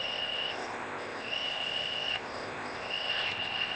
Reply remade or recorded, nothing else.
remade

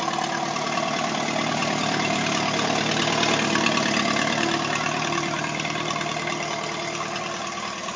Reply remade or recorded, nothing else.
recorded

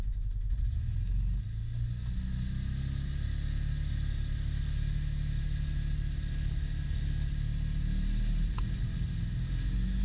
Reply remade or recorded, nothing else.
recorded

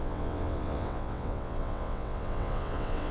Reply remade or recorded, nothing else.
remade